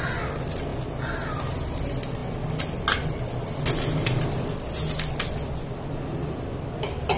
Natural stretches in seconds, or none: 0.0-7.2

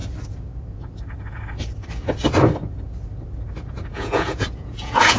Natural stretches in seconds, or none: 0.0-3.9

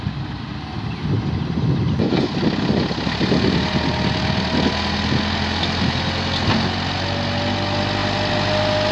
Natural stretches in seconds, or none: 0.0-8.9

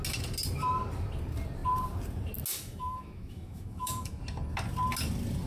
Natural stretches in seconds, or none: 0.0-2.5; 4.2-5.5

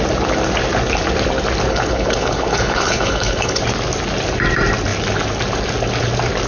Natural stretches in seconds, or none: 0.0-1.7; 3.6-6.5

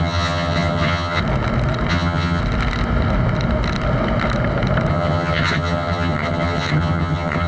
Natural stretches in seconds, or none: 1.2-1.9; 2.4-4.9